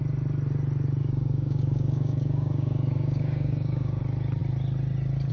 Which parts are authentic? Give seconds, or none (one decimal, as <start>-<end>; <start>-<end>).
0.0-1.0; 4.0-5.3